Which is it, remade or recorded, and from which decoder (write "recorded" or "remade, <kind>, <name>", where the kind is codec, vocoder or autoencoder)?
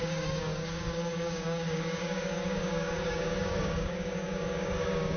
remade, codec, DAC